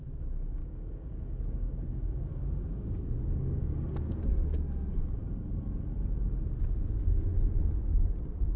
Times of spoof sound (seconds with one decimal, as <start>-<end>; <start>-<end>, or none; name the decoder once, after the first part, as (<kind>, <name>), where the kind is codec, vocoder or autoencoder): 0.6-4.2 (codec, DAC)